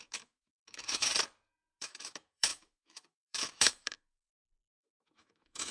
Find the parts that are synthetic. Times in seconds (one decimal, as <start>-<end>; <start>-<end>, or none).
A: 0.0-1.1; 1.8-5.7